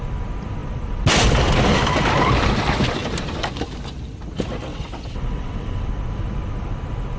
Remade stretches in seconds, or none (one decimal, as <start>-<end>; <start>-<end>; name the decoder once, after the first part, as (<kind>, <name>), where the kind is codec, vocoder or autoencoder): 4.7-5.9 (vocoder, WaveNeXt)